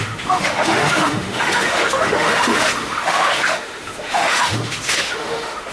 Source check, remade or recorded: remade